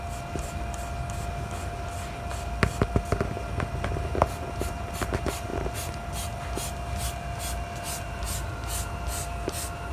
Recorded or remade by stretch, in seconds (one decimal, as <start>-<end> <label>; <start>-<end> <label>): 0.0-9.9 recorded